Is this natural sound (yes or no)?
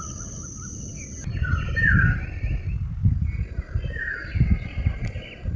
yes